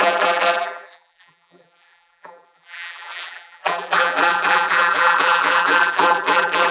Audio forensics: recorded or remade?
remade